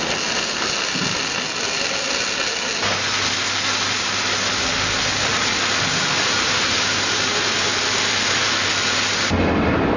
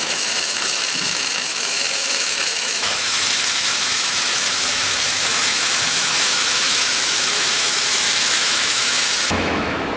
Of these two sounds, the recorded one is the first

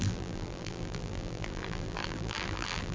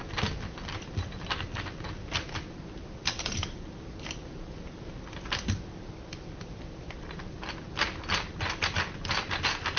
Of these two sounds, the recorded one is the second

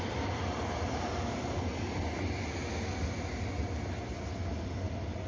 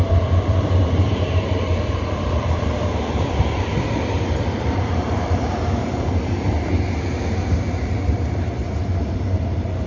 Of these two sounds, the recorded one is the first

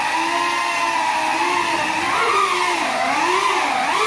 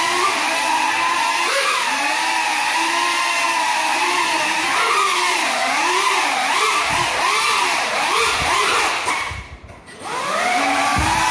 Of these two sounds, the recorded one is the first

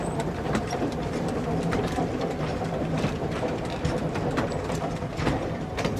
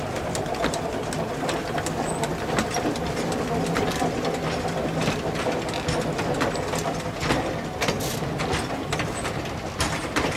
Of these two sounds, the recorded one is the second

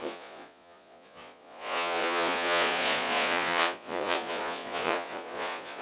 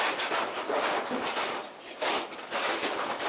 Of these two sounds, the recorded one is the second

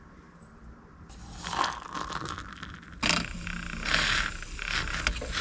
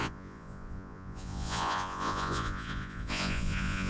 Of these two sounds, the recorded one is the first